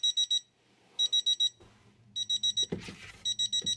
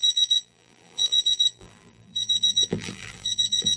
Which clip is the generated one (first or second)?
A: second